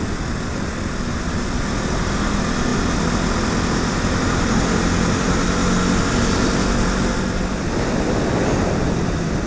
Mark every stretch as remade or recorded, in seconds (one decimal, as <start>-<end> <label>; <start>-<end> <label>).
0.0-9.5 recorded